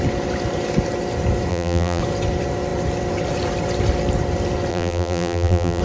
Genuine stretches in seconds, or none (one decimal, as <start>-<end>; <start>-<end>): 0.0-1.5; 2.0-4.7